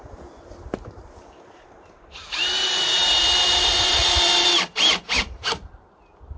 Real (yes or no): no